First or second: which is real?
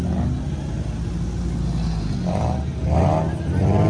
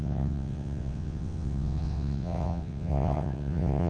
first